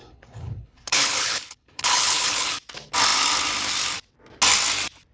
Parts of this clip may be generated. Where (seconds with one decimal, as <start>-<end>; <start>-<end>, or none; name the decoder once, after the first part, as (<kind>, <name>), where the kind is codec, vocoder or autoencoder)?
0.0-2.5 (codec, HILCodec)